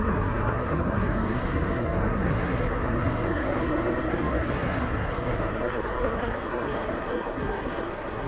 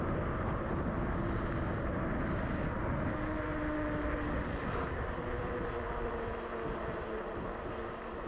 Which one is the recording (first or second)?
second